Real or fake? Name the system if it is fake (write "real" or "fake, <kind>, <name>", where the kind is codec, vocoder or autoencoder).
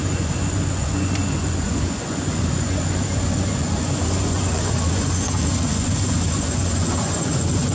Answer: fake, vocoder, Vocos